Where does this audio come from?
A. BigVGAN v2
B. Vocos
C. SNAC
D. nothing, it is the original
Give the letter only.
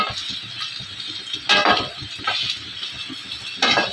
D